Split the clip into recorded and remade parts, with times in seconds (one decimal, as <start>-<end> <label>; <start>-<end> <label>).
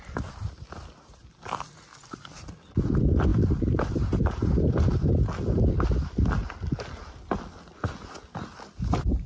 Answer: 0.0-9.3 recorded